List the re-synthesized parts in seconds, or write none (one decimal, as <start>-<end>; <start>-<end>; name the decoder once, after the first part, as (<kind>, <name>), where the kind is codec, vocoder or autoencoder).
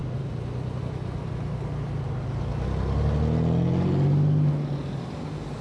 none